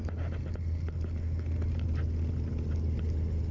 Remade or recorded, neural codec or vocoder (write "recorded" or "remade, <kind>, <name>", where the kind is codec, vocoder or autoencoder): recorded